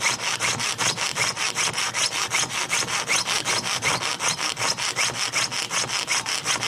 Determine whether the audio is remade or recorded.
recorded